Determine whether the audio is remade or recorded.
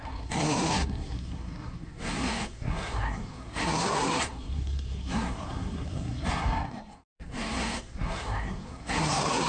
remade